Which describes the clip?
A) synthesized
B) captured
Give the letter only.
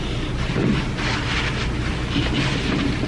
B